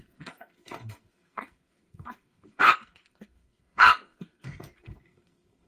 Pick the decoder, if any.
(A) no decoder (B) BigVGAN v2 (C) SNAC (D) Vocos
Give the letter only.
C